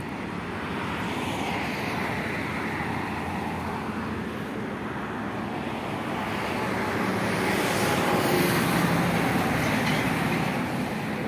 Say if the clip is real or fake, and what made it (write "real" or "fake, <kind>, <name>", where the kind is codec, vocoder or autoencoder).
real